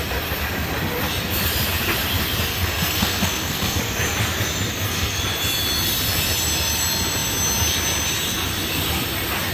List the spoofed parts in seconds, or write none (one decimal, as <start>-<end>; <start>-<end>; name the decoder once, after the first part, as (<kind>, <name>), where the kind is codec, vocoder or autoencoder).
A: 2.5-3.8 (codec, SNAC); 4.7-5.2